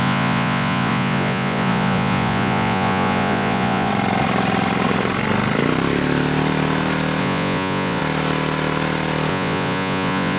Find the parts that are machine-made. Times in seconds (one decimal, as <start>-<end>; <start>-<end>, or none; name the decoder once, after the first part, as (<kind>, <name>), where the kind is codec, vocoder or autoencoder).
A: 0.0-3.9 (vocoder, Vocos); 7.2-8.0; 9.3-10.4